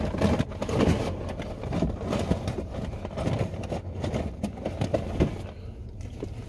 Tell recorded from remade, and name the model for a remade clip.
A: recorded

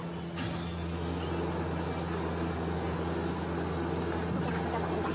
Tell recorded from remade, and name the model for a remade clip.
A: recorded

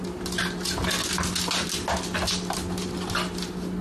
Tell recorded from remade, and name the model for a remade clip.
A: recorded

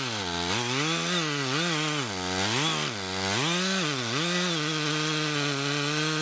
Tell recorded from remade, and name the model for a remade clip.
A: recorded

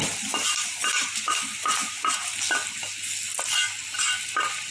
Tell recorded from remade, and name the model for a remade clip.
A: recorded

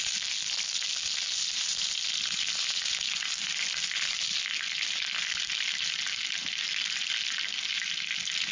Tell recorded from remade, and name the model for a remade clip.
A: recorded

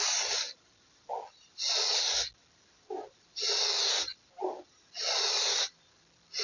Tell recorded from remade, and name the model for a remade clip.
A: recorded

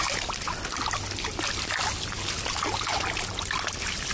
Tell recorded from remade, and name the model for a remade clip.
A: recorded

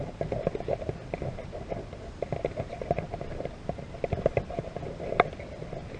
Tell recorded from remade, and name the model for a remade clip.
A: recorded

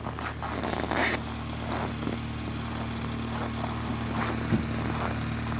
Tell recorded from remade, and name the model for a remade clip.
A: recorded